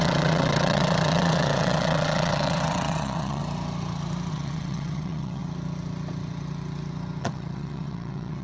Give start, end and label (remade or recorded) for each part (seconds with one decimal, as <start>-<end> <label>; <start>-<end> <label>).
0.0-3.4 remade; 3.4-4.3 recorded; 4.3-5.4 remade; 5.4-7.2 recorded; 7.2-8.4 remade